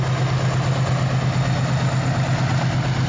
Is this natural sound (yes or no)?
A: yes